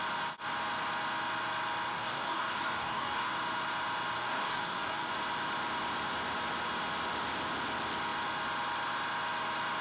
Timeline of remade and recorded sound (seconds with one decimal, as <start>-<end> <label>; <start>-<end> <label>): 0.0-1.9 recorded; 1.9-3.3 remade; 3.3-4.2 recorded; 4.2-5.1 remade; 5.1-9.8 recorded

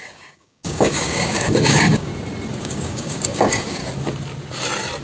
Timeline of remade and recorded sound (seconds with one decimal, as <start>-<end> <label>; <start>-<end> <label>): 0.0-2.1 remade; 2.1-2.6 recorded; 2.6-3.8 remade; 3.8-5.0 recorded

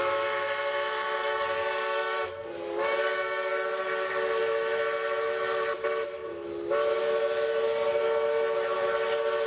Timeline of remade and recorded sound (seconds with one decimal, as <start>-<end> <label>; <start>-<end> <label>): 0.0-1.2 recorded; 1.2-4.1 remade; 4.1-9.5 recorded

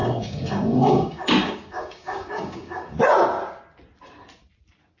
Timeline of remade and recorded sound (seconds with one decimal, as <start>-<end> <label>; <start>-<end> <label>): 0.0-3.0 remade; 3.0-5.0 recorded

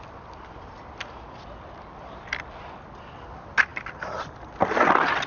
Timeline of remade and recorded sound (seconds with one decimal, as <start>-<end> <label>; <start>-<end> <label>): 0.0-5.3 recorded